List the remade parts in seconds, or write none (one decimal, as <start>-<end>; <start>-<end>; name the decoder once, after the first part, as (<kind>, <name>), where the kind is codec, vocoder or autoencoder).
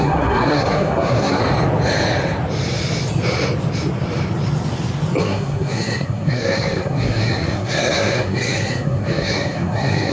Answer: 0.0-1.4 (codec, SNAC); 5.2-10.1